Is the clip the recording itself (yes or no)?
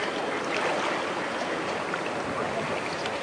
yes